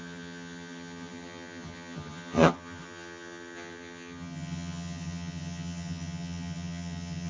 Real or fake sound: fake